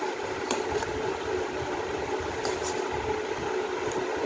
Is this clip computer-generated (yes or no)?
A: yes